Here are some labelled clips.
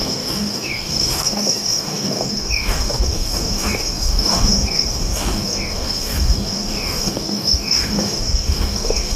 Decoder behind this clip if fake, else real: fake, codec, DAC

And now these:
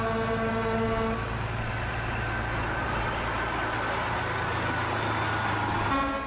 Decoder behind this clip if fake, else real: real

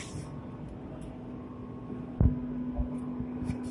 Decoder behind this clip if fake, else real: real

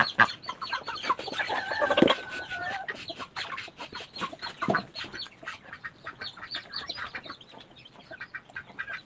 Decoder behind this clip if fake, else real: real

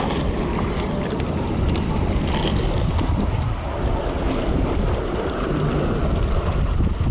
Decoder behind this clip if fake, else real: real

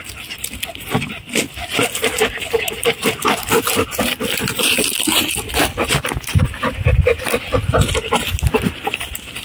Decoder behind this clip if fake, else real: real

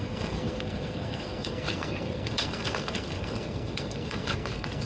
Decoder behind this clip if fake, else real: fake, codec, SNAC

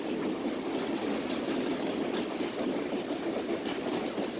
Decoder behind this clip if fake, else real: real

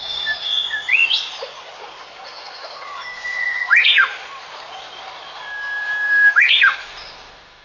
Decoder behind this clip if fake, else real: real